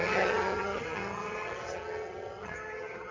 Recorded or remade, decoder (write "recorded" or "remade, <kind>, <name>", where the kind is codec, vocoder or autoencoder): remade, vocoder, HiFi-GAN